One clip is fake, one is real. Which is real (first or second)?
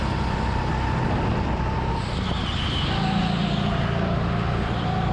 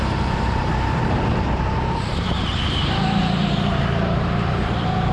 first